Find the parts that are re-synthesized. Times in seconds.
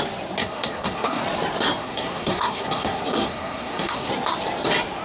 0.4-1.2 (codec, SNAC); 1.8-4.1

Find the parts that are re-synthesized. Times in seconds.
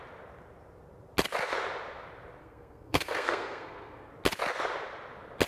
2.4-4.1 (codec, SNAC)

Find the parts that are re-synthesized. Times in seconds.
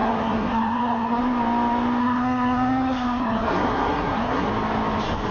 0.0-1.2 (codec, SNAC); 2.0-4.5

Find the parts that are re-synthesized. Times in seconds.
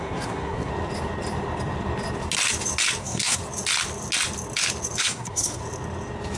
0.0-0.7 (codec, SNAC); 3.0-3.4; 5.0-5.6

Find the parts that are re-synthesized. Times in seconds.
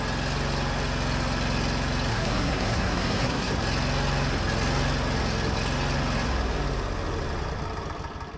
2.1-3.5 (codec, SNAC)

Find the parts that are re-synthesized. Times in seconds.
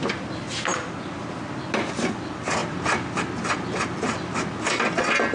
none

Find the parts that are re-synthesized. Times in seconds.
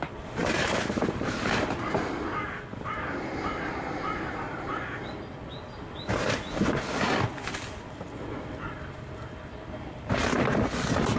none